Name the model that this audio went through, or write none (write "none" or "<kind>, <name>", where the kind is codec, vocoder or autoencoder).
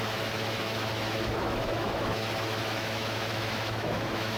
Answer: autoencoder, DAC-VAE